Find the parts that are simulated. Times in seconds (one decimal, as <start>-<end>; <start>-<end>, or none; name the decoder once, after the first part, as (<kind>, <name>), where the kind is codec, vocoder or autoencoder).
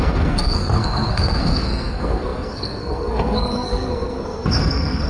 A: 0.0-5.1 (codec, SNAC)